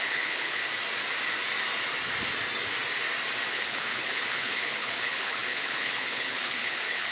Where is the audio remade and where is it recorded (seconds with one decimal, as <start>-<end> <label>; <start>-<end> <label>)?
0.0-0.6 remade; 0.6-3.5 recorded; 3.5-7.1 remade